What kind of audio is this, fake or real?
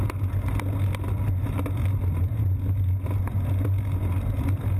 real